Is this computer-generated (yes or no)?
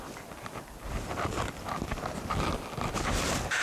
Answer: no